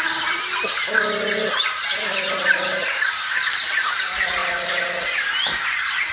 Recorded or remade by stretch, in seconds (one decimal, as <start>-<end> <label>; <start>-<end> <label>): 0.0-6.1 recorded